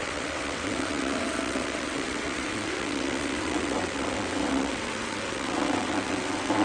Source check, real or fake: fake